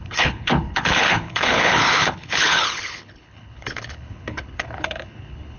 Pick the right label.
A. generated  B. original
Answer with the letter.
A